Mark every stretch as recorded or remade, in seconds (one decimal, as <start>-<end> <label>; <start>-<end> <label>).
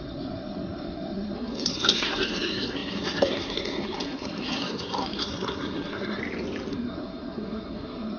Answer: 0.0-6.2 remade; 6.2-6.7 recorded; 6.7-8.2 remade